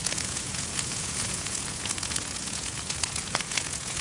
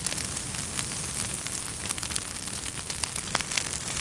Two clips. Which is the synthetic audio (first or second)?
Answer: first